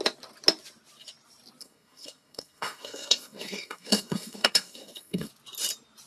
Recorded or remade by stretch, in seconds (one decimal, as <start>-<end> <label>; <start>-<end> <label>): 0.0-1.6 recorded; 1.6-5.3 remade; 5.3-6.1 recorded